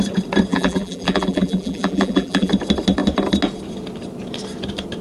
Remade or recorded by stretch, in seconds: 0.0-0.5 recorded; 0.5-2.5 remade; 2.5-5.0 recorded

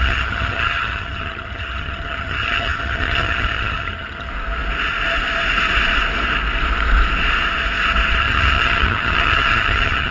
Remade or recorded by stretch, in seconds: 0.0-4.3 remade; 4.3-8.2 recorded; 8.2-10.1 remade

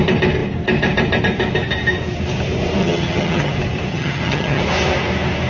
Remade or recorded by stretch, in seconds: 0.0-2.8 recorded; 2.8-3.5 remade; 3.5-3.9 recorded; 3.9-4.6 remade; 4.6-5.5 recorded